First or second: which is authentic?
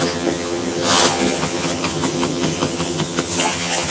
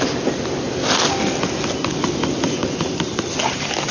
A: second